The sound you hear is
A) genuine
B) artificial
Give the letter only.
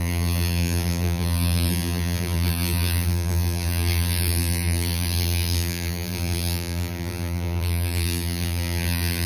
B